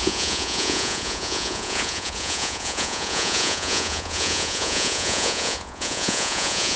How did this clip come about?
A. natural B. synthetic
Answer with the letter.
B